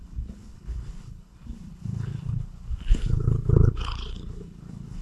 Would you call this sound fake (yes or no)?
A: yes